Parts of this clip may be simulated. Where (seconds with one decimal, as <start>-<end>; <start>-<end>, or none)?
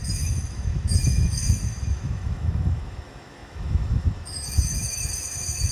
0.0-5.7